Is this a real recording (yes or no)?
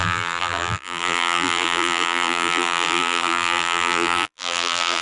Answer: no